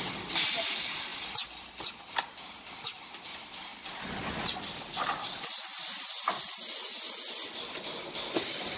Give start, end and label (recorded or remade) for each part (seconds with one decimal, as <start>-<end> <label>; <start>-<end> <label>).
0.0-8.8 recorded